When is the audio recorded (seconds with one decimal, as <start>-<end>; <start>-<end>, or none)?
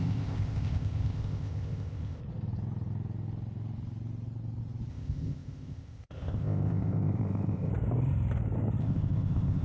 2.2-4.9; 7.7-8.8